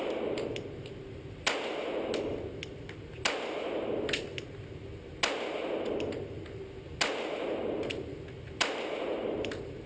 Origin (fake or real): real